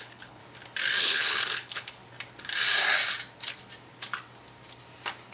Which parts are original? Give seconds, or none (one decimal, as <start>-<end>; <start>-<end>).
0.4-1.0; 2.0-5.3